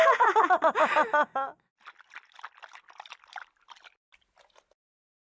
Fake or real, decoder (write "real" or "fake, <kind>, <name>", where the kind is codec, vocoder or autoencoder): real